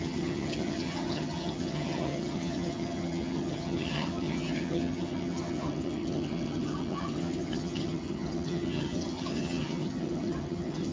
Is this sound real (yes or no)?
no